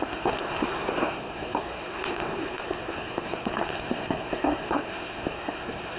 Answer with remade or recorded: remade